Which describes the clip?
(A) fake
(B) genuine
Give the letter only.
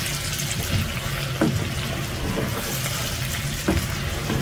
B